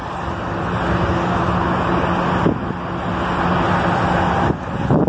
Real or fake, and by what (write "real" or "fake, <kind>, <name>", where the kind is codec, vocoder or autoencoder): real